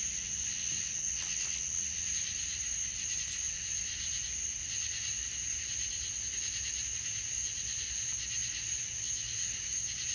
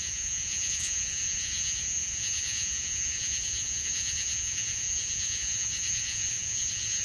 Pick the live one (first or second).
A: first